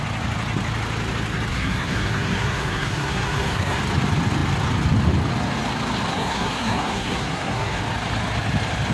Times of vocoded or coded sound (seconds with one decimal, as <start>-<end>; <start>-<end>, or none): 1.5-3.8; 6.1-7.8